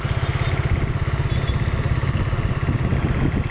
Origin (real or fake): real